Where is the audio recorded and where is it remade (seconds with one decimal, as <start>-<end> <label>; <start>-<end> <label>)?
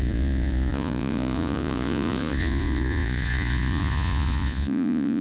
0.0-5.2 remade